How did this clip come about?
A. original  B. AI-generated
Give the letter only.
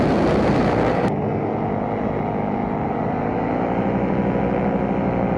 A